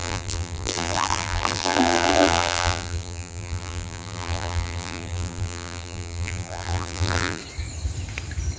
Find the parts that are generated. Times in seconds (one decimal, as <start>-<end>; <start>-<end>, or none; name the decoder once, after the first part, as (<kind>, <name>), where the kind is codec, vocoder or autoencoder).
0.0-7.4 (vocoder, BigVGAN v2)